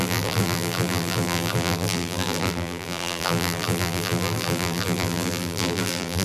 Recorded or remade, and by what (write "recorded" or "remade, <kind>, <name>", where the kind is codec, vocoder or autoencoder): remade, vocoder, BigVGAN v2